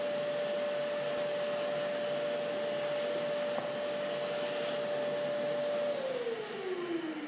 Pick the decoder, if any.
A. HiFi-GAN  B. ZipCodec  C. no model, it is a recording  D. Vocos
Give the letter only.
C